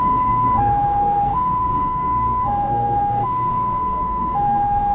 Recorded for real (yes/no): no